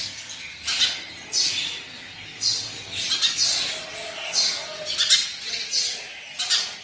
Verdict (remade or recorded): recorded